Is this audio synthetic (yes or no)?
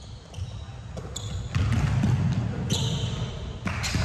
no